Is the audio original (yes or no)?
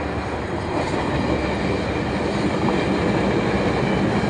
yes